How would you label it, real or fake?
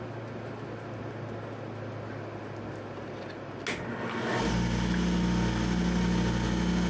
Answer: real